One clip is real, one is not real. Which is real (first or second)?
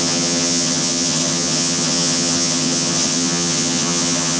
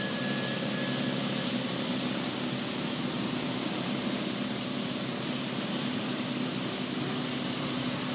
second